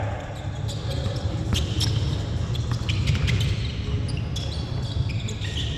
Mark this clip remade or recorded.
recorded